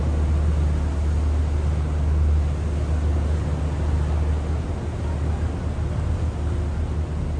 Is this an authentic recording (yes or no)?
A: yes